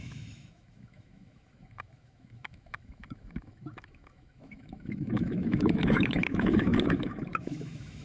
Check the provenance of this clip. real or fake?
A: fake